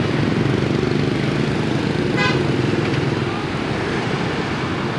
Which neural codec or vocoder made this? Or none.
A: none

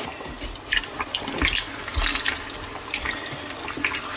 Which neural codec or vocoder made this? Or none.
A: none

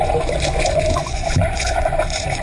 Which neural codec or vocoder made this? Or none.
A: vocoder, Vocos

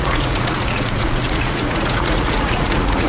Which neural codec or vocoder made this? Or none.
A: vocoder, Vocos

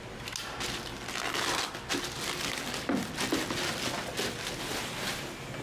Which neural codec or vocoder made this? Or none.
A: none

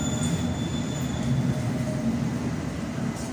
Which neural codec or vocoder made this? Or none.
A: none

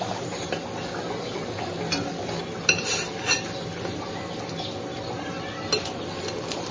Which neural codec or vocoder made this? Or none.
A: none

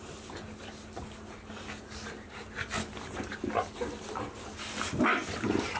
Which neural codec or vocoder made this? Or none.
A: none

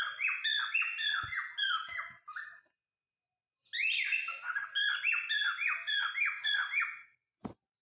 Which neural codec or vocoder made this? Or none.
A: none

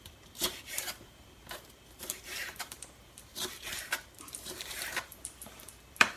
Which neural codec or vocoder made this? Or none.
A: vocoder, BigVGAN v2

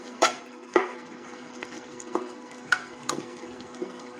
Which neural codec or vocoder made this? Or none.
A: codec, SNAC